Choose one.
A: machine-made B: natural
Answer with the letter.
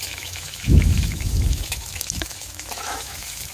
A